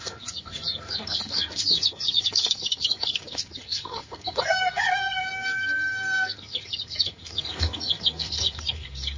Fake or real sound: fake